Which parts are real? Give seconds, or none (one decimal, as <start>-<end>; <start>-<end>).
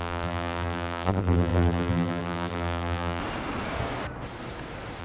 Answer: 3.2-5.0